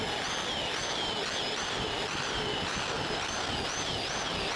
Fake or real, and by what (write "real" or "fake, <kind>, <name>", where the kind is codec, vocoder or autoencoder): real